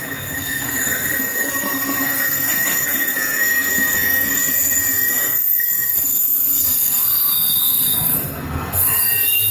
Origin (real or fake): fake